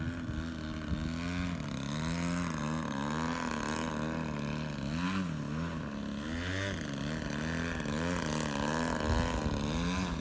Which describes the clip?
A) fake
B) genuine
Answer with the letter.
B